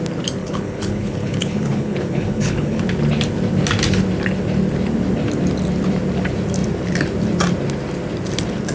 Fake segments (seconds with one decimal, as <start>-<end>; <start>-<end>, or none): 0.4-2.8